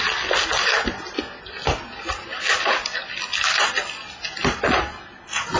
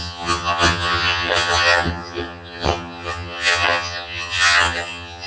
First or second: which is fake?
second